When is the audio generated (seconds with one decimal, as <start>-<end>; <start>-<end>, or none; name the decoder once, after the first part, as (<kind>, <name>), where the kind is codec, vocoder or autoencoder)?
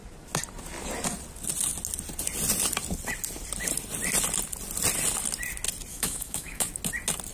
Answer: 5.9-6.8 (autoencoder, DAC-VAE)